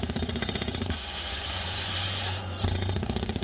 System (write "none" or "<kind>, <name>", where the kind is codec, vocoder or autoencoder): vocoder, Vocos